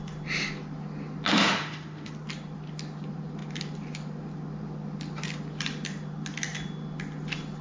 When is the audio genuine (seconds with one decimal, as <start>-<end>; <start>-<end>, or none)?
0.0-1.3; 2.1-7.6